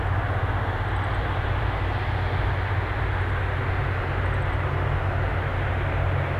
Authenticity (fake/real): real